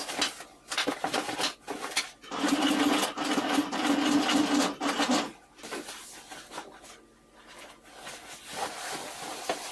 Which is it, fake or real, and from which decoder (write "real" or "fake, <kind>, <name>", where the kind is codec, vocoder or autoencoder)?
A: real